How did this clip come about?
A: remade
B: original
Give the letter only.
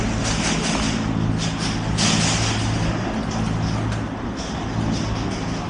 B